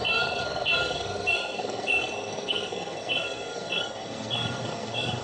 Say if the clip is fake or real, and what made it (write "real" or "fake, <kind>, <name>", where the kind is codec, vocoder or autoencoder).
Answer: fake, codec, SNAC